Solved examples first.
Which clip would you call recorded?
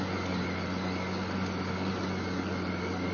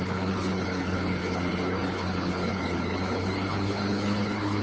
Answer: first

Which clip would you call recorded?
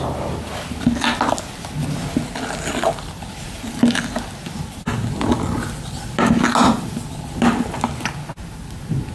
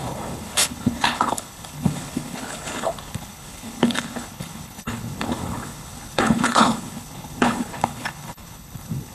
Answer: first